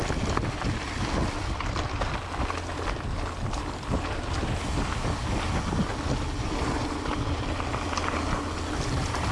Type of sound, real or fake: real